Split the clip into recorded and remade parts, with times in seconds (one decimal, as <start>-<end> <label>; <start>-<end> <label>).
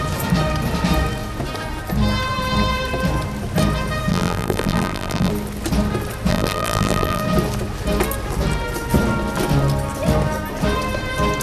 0.0-4.1 recorded; 4.1-5.3 remade; 5.3-6.3 recorded; 6.3-7.2 remade; 7.2-11.4 recorded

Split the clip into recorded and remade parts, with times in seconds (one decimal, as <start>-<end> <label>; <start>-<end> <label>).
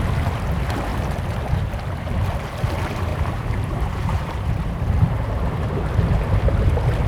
0.0-3.1 recorded; 3.1-4.8 remade; 4.8-7.1 recorded